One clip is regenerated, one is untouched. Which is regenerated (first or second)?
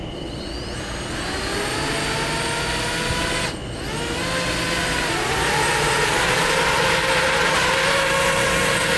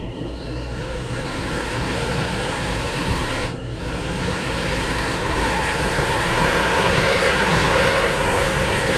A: second